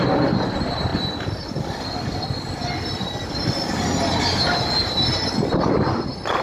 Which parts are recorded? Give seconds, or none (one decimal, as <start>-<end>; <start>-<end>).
0.0-6.4